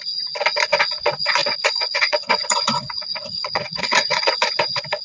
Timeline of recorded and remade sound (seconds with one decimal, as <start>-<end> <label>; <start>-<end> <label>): 0.0-1.4 recorded; 1.4-4.4 remade; 4.4-5.0 recorded